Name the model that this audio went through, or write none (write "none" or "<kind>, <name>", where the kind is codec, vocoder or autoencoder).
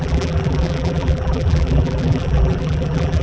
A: vocoder, BigVGAN v2